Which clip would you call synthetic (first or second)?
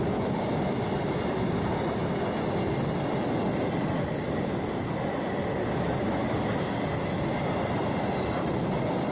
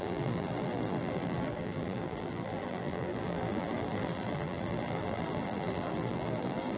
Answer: second